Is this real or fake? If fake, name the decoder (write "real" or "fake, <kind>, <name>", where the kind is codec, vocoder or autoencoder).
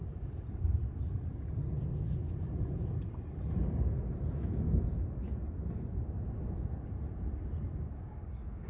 real